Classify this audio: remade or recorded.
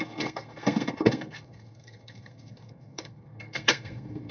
remade